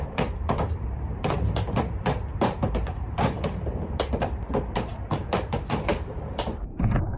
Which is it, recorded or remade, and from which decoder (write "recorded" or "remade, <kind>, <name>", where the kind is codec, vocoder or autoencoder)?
remade, vocoder, BigVGAN v2